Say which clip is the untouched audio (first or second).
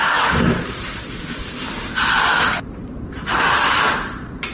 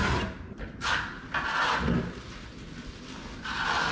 second